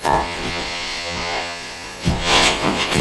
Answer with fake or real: fake